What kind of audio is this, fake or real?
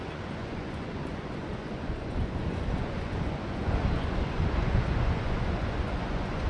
fake